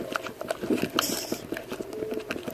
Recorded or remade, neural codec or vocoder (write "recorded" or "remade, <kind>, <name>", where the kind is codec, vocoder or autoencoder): recorded